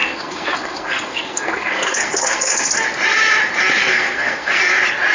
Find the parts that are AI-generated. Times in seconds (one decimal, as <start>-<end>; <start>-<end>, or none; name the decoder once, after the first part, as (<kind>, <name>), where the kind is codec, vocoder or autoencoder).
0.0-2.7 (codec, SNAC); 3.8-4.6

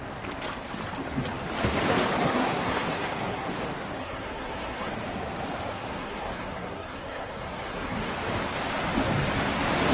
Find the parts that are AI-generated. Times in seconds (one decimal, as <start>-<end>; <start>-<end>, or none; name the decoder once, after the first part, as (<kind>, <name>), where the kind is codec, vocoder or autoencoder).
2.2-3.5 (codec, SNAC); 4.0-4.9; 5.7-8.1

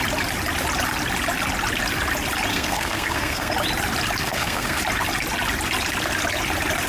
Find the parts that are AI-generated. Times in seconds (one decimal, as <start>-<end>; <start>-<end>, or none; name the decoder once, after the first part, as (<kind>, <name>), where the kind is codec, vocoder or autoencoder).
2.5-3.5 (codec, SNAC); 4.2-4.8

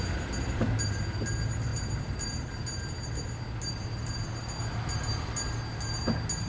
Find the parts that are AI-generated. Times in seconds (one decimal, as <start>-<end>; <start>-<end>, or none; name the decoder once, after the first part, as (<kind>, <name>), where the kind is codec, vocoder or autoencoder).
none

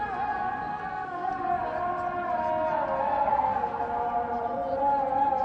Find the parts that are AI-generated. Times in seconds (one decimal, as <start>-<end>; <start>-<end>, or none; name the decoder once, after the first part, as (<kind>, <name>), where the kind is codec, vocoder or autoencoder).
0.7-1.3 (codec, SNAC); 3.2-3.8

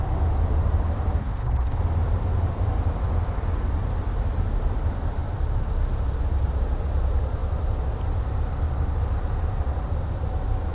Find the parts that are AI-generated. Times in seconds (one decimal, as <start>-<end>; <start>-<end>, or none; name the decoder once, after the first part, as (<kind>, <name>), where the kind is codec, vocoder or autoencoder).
1.2-1.8 (codec, SNAC)

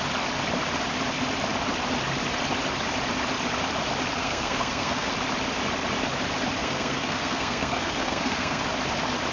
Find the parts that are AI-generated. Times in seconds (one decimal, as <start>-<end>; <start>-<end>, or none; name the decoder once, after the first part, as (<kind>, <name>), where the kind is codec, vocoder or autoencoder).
4.2-5.1 (codec, SNAC); 6.6-8.6